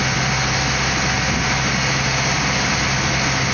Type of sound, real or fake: real